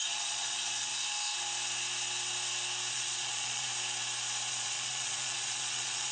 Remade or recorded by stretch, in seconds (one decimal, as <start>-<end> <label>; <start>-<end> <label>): 0.0-0.9 remade; 0.9-2.9 recorded; 2.9-3.7 remade; 3.7-4.5 recorded; 4.5-6.1 remade